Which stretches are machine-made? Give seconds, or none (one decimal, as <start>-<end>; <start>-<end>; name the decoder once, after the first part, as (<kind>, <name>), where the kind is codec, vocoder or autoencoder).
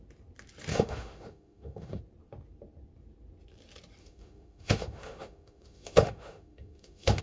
0.7-2.0 (autoencoder, DAC-VAE); 4.0-7.2